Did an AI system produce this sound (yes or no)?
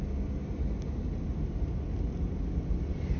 no